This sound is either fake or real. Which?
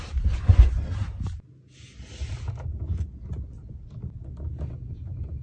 real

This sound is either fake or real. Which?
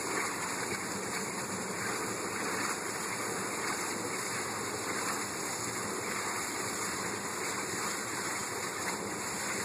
fake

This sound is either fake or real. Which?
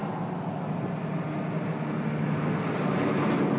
real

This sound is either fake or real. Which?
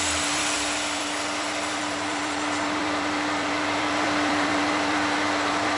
fake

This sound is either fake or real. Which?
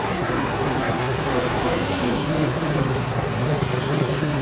fake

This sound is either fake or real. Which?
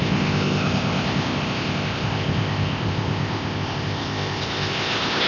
fake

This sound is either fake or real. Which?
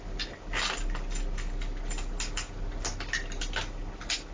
real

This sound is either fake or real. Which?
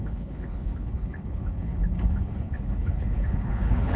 fake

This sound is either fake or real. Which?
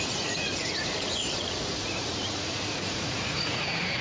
fake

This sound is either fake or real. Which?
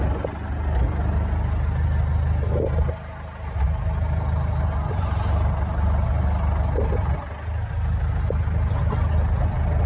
real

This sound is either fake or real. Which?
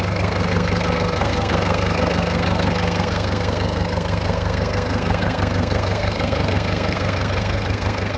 fake